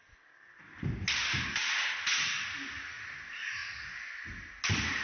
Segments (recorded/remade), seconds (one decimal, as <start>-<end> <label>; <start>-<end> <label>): 0.0-5.0 recorded